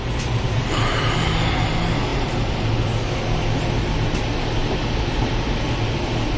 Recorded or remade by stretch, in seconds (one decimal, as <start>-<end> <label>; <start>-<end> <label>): 0.0-1.1 remade; 1.1-6.4 recorded